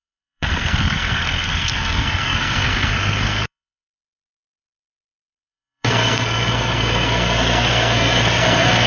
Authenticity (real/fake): fake